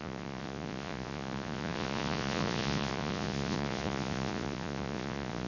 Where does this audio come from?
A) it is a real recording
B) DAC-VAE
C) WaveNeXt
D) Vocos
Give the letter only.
D